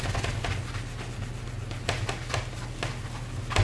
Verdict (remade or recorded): recorded